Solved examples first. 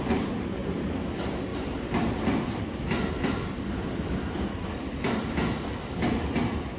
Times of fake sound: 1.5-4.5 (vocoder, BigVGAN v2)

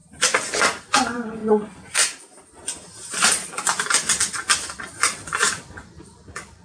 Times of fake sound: 0.6-1.4 (vocoder, BigVGAN v2); 3.1-4.2; 4.8-6.6

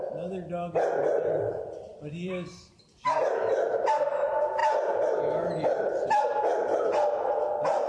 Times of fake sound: 0.0-4.6 (vocoder, BigVGAN v2); 5.9-6.5; 7.5-7.9

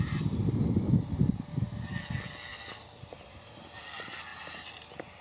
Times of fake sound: 2.5-3.8 (vocoder, BigVGAN v2)

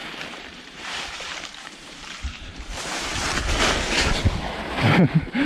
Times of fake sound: 0.0-3.2 (vocoder, BigVGAN v2); 4.5-5.5